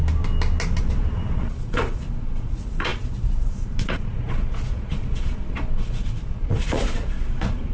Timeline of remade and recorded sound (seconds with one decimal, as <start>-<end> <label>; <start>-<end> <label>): 0.0-0.8 recorded; 0.8-7.7 remade